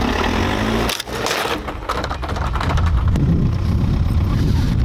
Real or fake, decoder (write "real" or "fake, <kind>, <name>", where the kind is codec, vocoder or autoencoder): real